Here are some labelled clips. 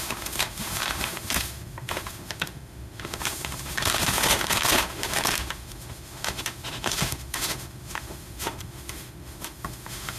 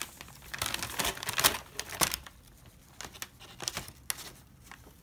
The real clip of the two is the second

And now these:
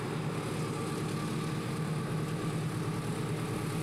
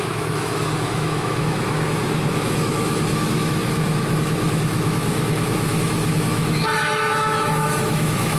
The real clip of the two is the first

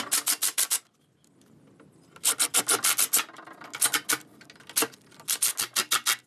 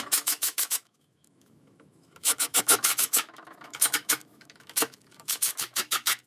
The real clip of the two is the first